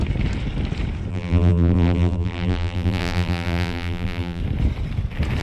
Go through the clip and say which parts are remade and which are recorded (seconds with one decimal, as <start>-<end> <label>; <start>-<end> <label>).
0.0-1.1 recorded; 1.1-4.4 remade; 4.4-5.4 recorded